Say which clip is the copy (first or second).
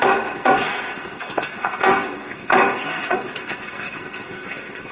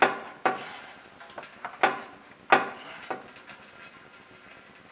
first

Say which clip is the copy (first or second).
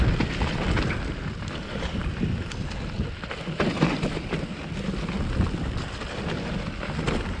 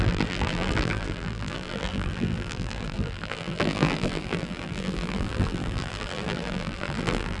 second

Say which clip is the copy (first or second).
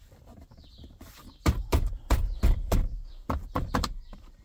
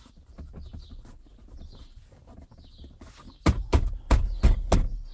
first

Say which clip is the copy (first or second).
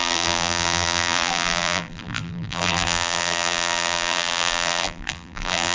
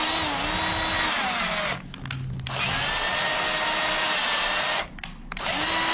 first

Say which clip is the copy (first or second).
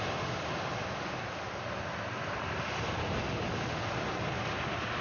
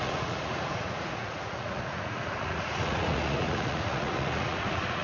second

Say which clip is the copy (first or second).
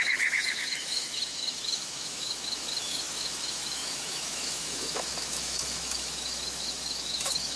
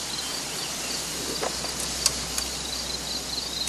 first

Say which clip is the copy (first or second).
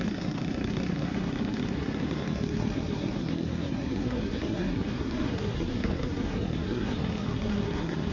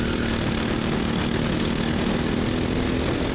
first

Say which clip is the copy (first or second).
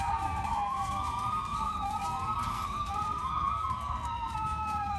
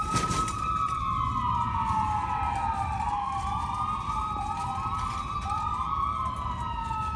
first